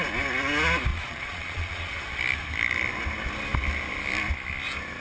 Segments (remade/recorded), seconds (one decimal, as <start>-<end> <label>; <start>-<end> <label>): 0.0-0.9 recorded; 0.9-2.2 remade; 2.2-5.0 recorded